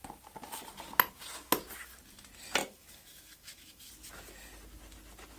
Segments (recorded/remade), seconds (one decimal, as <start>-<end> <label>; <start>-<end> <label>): 0.0-2.6 recorded; 2.6-3.9 remade; 3.9-5.4 recorded